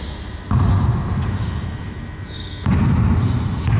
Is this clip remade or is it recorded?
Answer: remade